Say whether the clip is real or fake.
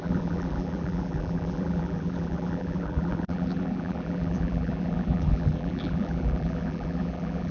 fake